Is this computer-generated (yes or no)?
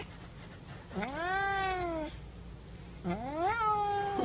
no